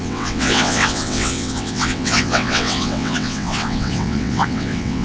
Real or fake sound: fake